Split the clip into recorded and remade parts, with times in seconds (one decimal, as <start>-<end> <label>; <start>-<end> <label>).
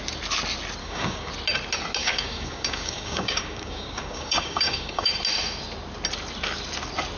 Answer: 0.0-0.8 recorded; 0.8-1.3 remade; 1.3-2.0 recorded; 2.0-5.1 remade; 5.1-7.2 recorded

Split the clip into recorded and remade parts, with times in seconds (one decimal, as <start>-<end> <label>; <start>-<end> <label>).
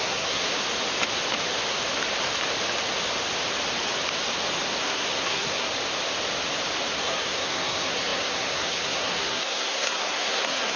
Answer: 0.0-0.6 remade; 0.6-4.8 recorded; 4.8-5.7 remade; 5.7-7.0 recorded; 7.0-10.8 remade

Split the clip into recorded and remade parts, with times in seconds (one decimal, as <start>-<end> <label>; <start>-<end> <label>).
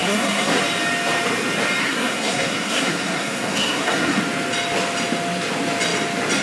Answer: 0.0-0.6 remade; 0.6-1.8 recorded; 1.8-4.2 remade; 4.2-6.4 recorded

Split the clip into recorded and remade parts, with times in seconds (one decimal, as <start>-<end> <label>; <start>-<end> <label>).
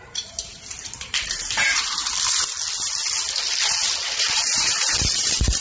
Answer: 0.0-2.0 remade; 2.0-4.0 recorded; 4.0-5.6 remade